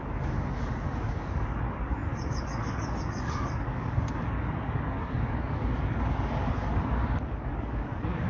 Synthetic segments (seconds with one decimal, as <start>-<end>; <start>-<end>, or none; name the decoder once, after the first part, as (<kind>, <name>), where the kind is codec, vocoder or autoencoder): 0.0-8.3 (codec, DAC)